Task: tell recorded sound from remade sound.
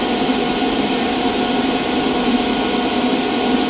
recorded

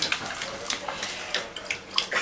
recorded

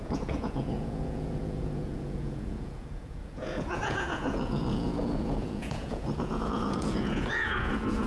remade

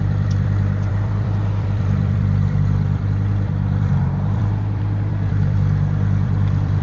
remade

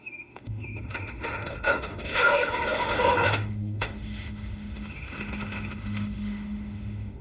remade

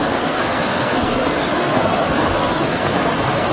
remade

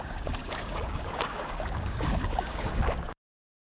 remade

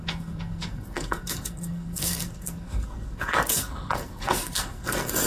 remade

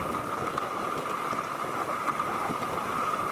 recorded